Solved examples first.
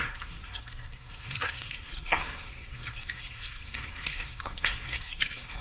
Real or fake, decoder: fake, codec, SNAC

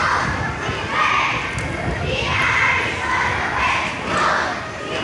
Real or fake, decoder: real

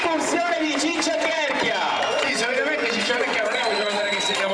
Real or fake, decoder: fake, vocoder, Vocos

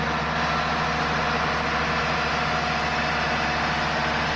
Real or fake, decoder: real